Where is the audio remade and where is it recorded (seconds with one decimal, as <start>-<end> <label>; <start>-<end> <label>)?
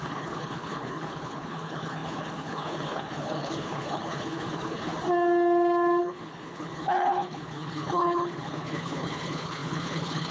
0.0-4.9 remade; 4.9-6.0 recorded; 6.0-10.3 remade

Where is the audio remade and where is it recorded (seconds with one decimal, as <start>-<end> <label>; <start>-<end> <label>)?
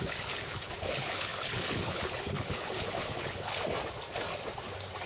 0.0-3.5 remade; 3.5-5.1 recorded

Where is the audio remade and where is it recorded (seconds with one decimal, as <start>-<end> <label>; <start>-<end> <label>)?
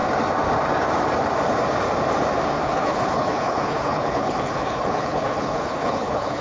0.0-2.6 recorded; 2.6-6.4 remade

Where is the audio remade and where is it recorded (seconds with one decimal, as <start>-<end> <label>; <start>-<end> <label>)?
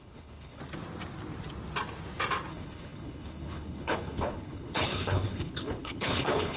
0.0-0.6 remade; 0.6-2.5 recorded; 2.5-6.6 remade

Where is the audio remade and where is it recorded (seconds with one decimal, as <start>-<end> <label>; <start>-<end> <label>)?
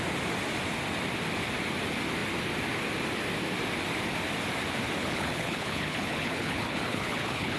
0.0-5.0 recorded; 5.0-7.6 remade